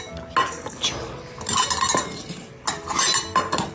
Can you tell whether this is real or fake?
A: real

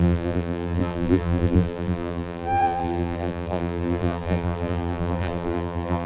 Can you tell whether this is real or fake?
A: fake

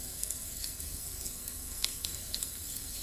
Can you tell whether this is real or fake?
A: fake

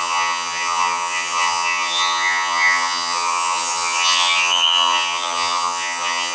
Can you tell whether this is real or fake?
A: fake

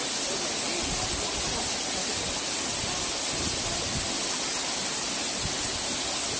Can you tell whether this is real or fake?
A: real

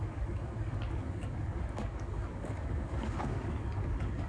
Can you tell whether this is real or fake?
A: fake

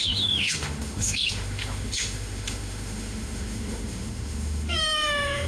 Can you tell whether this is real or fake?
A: fake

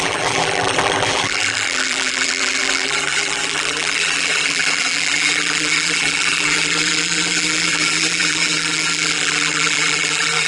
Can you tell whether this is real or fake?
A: fake